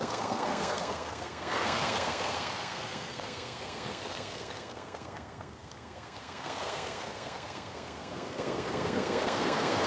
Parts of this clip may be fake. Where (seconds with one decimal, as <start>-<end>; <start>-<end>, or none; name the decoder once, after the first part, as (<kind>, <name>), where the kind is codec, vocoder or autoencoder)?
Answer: 0.0-9.9 (codec, SNAC)